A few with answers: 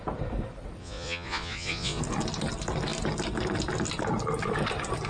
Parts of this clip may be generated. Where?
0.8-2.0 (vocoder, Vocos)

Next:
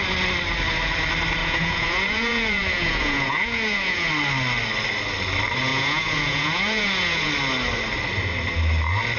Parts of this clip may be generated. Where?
1.4-4.1 (vocoder, Vocos); 5.7-7.3

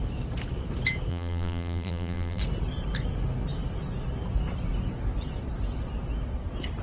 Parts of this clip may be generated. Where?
1.1-2.4 (vocoder, BigVGAN v2)

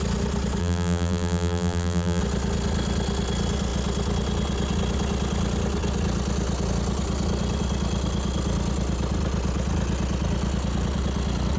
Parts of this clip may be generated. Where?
0.6-2.2 (vocoder, BigVGAN v2)

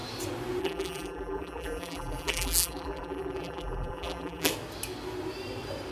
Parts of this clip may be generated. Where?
0.6-4.5 (vocoder, BigVGAN v2)

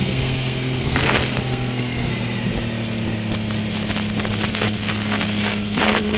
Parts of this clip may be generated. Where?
0.0-2.1 (codec, SNAC); 4.5-6.2

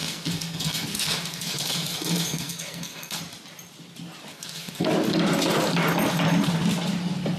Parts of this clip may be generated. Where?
0.0-3.2 (codec, SNAC); 4.3-4.9